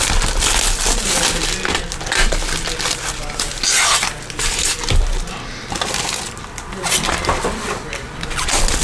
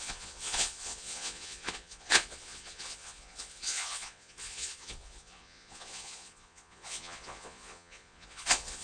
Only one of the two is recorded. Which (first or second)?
first